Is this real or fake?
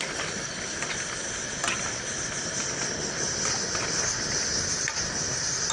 real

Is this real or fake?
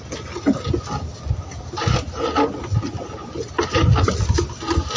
real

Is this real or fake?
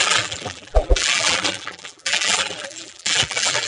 fake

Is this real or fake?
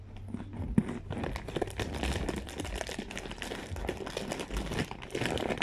real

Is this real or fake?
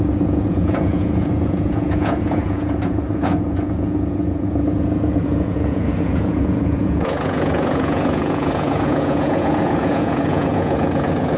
fake